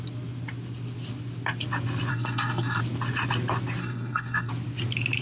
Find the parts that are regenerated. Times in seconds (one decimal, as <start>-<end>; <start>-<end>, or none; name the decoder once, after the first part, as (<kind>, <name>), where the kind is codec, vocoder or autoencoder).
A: 2.1-2.8 (codec, SNAC); 3.8-4.5